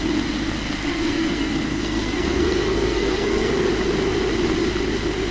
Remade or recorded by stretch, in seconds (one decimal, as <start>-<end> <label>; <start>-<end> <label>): 0.0-0.9 recorded; 0.9-3.7 remade; 3.7-5.3 recorded